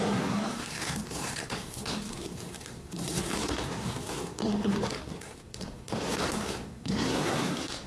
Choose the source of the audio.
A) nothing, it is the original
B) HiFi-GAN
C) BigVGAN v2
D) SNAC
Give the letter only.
D